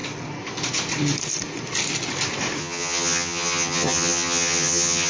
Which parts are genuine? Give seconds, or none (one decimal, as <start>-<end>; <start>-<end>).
0.0-2.6